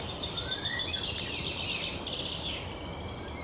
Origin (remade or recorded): recorded